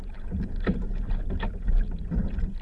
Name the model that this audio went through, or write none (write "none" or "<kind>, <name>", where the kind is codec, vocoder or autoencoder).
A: none